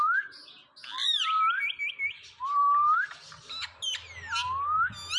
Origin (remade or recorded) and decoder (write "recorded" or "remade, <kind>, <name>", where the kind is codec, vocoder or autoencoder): recorded